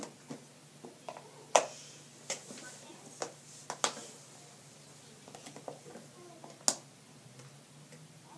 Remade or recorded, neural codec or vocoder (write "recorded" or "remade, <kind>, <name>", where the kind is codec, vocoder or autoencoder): recorded